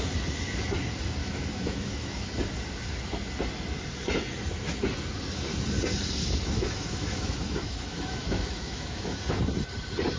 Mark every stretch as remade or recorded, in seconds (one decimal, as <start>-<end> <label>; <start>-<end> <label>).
0.0-1.2 recorded; 1.2-2.3 remade; 2.3-6.2 recorded; 6.2-9.2 remade; 9.2-10.2 recorded